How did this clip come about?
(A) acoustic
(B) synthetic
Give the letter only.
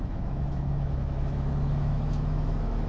B